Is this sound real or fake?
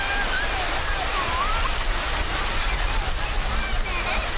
fake